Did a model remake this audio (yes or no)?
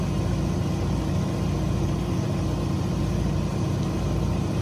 no